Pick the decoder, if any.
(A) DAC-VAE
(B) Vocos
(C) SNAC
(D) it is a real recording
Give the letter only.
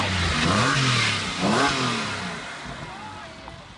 D